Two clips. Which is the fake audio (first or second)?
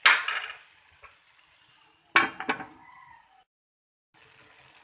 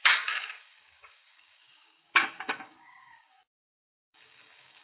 second